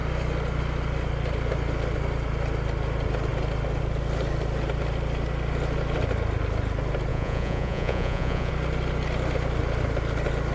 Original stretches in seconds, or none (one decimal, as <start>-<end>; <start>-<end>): 0.0-7.1; 8.5-10.5